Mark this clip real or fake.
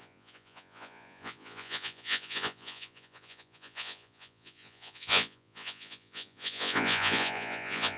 fake